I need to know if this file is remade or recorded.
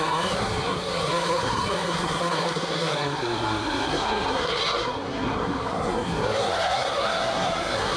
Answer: remade